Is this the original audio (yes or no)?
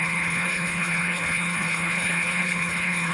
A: no